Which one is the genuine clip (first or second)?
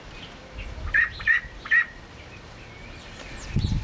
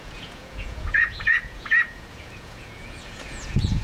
first